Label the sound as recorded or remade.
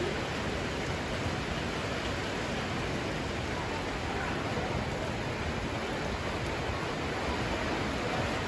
recorded